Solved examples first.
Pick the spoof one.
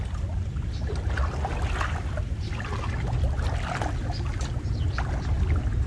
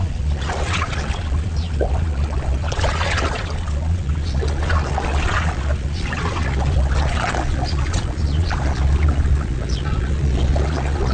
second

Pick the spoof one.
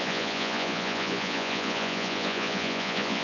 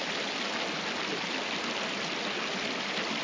first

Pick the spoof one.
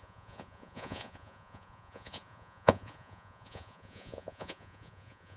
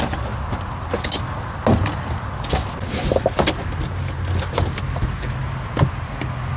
first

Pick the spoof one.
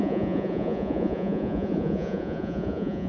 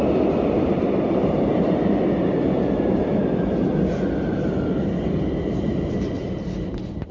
first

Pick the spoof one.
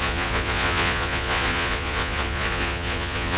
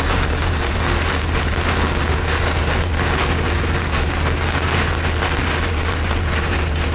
first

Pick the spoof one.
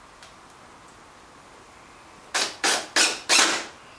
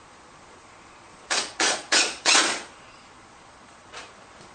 second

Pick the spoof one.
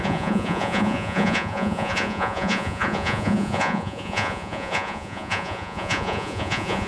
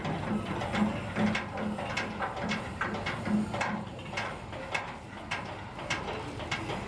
first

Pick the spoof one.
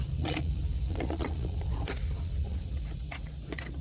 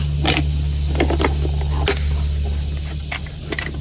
first